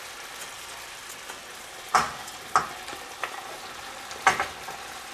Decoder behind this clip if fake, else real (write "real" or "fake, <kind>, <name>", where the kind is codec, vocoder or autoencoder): real